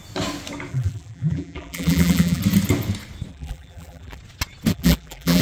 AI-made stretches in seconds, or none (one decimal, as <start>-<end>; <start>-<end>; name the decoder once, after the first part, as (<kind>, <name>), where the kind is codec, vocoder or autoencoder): 0.7-2.4 (vocoder, BigVGAN v2); 3.3-4.2; 4.7-5.4